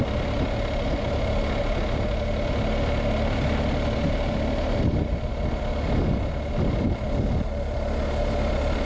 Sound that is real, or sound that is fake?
real